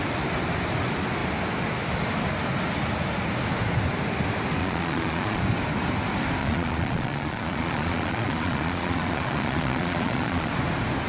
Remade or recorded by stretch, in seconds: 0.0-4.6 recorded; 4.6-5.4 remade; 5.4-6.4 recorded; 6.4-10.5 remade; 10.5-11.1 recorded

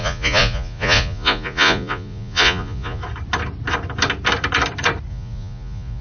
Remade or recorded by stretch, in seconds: 0.0-3.0 remade; 3.0-5.1 recorded; 5.1-6.0 remade

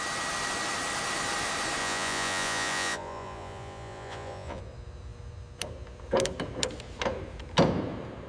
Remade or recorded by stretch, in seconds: 0.0-1.8 recorded; 1.8-4.6 remade; 4.6-8.3 recorded